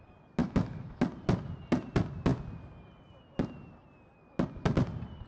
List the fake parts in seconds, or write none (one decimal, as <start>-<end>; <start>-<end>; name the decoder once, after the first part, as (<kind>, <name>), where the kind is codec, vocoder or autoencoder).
0.4-1.0 (autoencoder, DAC-VAE)